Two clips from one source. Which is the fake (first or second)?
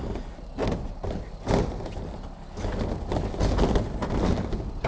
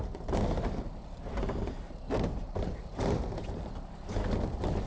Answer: second